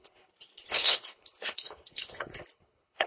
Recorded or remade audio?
remade